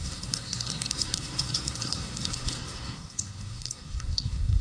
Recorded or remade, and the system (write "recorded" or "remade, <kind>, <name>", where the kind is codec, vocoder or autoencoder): remade, codec, SNAC